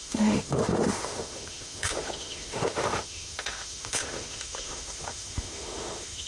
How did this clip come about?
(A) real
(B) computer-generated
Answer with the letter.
B